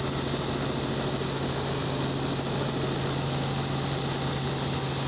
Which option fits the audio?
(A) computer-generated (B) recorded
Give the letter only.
B